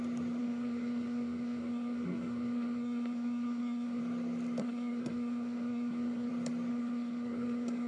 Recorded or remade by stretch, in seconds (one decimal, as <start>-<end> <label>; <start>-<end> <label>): 0.0-0.4 recorded; 0.4-4.0 remade; 4.0-4.6 recorded; 4.6-6.3 remade; 6.3-6.7 recorded; 6.7-7.9 remade